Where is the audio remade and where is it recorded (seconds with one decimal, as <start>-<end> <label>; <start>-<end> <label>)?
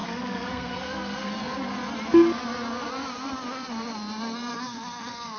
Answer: 0.0-1.3 remade; 1.3-4.5 recorded; 4.5-5.4 remade